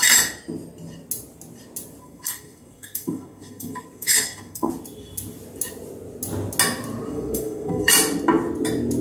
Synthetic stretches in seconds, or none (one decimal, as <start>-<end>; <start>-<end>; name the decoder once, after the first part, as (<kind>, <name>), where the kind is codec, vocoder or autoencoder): 2.0-4.7 (codec, SNAC); 7.1-7.9